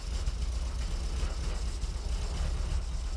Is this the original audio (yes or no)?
yes